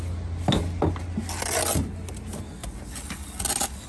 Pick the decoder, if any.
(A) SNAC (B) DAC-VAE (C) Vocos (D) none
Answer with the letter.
D